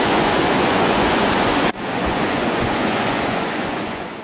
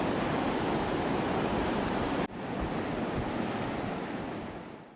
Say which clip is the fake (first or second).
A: first